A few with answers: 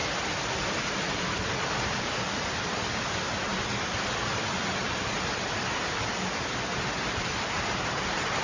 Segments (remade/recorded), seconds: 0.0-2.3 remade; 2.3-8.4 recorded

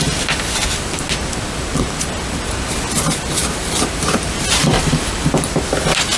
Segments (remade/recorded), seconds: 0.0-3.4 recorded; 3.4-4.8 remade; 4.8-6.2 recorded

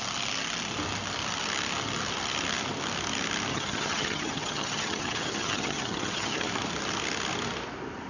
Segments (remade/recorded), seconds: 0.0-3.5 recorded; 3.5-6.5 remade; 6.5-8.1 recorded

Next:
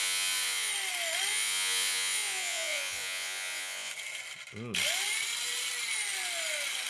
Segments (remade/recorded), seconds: 0.0-0.7 remade; 0.7-1.3 recorded; 1.3-3.9 remade; 3.9-6.9 recorded

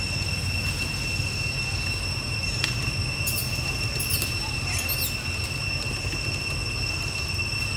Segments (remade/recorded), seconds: 0.0-3.4 recorded; 3.4-4.5 remade; 4.5-7.8 recorded